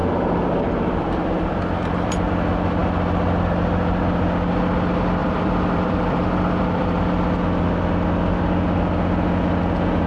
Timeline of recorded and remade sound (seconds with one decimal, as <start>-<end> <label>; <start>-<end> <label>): 0.0-2.3 remade; 2.3-5.2 recorded; 5.2-7.0 remade; 7.0-10.1 recorded